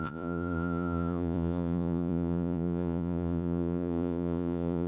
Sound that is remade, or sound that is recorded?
remade